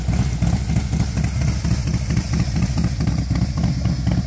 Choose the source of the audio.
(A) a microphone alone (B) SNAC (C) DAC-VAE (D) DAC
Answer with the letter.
A